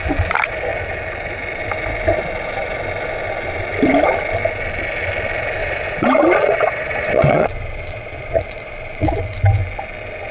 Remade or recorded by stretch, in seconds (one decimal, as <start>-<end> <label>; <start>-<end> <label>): 0.0-5.6 recorded; 5.6-9.1 remade; 9.1-10.3 recorded